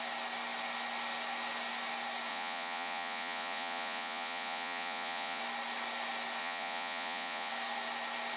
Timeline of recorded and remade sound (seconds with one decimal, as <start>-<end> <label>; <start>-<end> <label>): 0.0-2.3 recorded; 2.3-5.4 remade; 5.4-6.4 recorded; 6.4-7.5 remade; 7.5-8.4 recorded